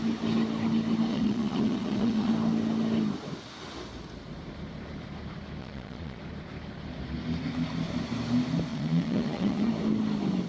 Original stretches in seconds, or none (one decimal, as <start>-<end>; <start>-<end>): 0.0-1.1; 2.3-5.6; 6.2-8.7; 9.7-10.5